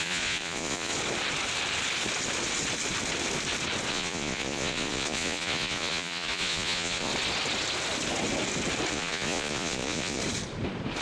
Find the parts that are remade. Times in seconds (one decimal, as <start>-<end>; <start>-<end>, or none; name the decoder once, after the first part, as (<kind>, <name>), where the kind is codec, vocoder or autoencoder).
0.0-0.9 (vocoder, Vocos); 3.9-7.1; 8.9-10.2